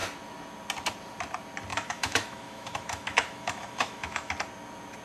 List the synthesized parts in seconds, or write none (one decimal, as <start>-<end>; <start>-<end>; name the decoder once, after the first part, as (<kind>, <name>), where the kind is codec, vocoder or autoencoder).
1.7-4.3 (autoencoder, DAC-VAE)